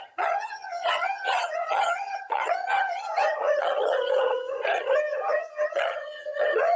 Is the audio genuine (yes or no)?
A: no